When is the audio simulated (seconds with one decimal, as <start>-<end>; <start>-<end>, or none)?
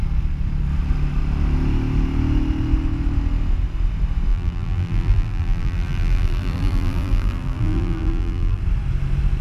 4.3-8.6